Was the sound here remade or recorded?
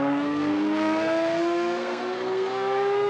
remade